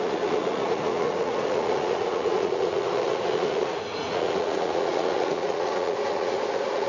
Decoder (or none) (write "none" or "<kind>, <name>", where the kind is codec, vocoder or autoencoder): vocoder, Vocos